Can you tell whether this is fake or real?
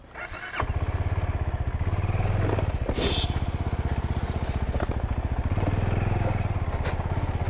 real